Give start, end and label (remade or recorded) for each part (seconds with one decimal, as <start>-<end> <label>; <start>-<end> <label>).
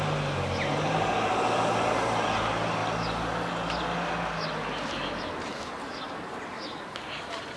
0.0-7.6 recorded